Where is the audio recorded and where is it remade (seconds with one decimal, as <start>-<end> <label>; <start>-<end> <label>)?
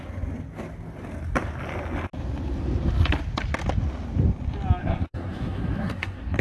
0.0-4.8 recorded; 4.8-6.4 remade